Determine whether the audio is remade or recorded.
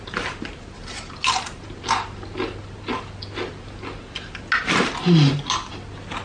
recorded